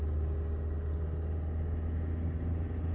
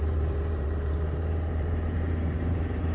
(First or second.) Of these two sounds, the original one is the first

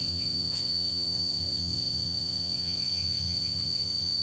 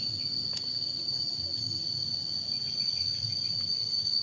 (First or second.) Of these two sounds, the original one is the second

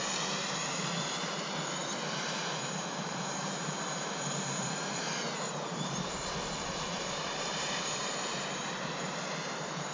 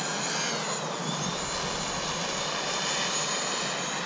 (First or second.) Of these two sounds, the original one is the second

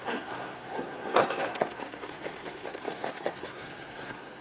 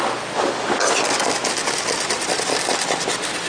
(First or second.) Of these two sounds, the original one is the second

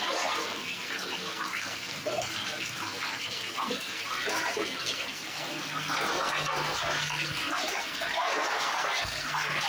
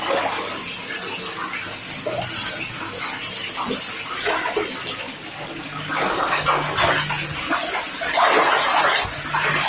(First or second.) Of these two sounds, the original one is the second